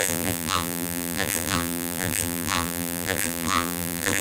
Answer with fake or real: fake